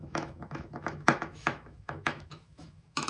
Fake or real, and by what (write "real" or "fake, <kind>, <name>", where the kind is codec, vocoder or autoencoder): fake, autoencoder, DAC-VAE